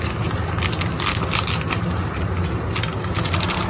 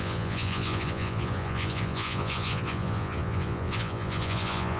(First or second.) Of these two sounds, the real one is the first